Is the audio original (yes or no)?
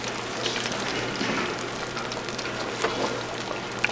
yes